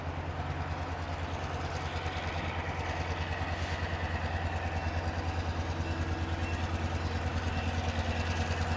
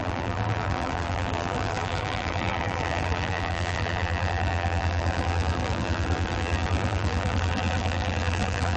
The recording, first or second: first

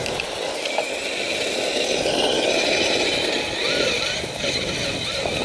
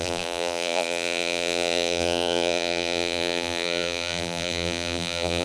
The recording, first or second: first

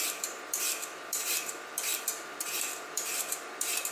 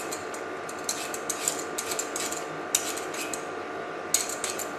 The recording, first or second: second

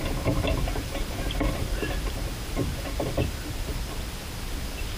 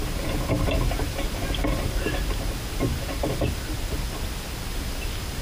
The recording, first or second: second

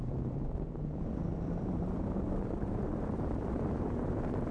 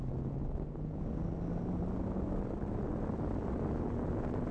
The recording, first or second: second